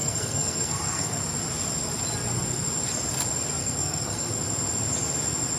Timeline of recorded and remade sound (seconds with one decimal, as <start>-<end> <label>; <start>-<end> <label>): 0.0-1.2 remade; 1.2-3.6 recorded; 3.6-4.3 remade; 4.3-5.6 recorded